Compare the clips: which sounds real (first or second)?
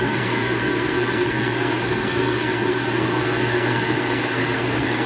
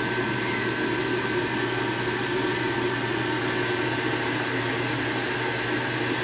second